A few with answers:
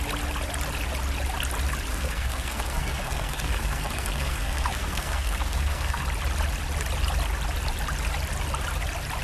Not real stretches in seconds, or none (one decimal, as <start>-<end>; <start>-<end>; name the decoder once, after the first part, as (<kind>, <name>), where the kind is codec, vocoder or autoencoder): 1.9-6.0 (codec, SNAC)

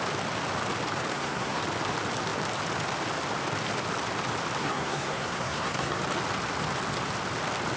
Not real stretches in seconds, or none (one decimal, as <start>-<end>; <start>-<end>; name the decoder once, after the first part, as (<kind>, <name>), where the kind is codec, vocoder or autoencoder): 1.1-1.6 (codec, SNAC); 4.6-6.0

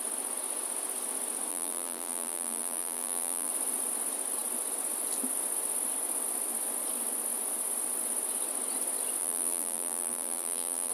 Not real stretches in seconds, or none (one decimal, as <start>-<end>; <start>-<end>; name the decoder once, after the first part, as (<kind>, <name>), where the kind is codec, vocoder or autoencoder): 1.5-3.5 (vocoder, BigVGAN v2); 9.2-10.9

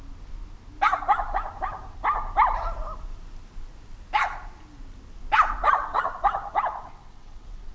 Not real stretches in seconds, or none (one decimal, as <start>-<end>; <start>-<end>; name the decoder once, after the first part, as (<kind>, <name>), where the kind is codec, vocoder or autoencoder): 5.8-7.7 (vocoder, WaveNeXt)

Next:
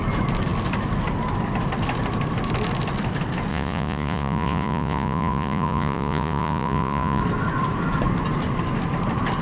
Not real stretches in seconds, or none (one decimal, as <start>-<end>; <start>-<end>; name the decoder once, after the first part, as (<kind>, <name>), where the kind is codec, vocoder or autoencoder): 3.5-7.2 (vocoder, Vocos)